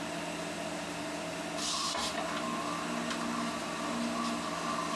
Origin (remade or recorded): recorded